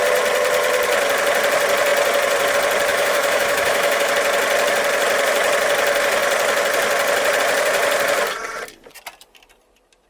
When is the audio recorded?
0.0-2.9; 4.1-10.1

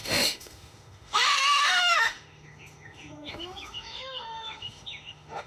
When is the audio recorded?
none

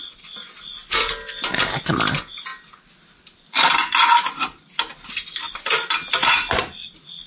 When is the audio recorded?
0.0-7.3